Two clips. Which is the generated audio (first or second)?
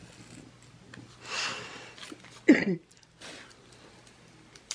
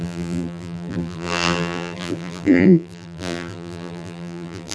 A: second